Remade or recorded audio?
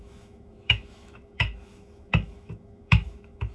remade